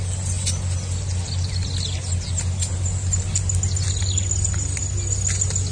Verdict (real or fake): real